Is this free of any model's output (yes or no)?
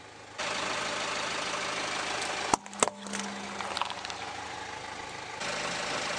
yes